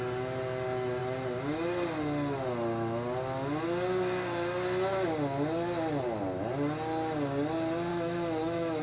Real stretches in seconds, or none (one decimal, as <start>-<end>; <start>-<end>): 0.0-7.9